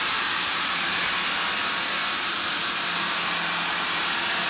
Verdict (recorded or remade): remade